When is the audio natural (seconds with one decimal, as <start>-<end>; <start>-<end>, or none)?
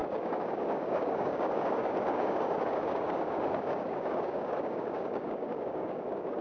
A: none